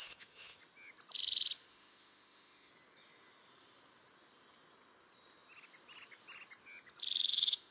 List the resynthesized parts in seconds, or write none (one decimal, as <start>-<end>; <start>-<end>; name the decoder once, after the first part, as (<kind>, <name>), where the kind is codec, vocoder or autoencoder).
0.0-0.6 (autoencoder, DAC-VAE); 1.7-2.7; 7.3-7.7